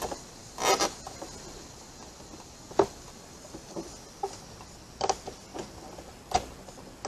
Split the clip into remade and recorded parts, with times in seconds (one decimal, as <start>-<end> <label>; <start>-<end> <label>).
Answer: 0.0-7.1 recorded